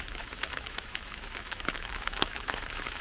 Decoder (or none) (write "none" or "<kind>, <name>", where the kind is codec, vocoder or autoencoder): autoencoder, DAC-VAE